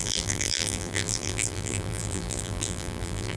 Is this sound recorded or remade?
remade